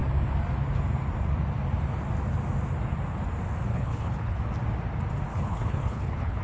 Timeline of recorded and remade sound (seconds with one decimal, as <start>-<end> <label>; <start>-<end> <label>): 0.0-3.7 recorded; 3.7-4.4 remade; 4.4-5.3 recorded; 5.3-6.4 remade